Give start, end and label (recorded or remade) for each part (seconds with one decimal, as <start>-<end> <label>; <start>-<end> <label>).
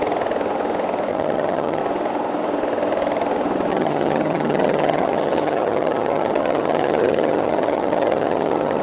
0.0-1.1 recorded; 1.1-1.8 remade; 1.8-3.7 recorded; 3.7-8.8 remade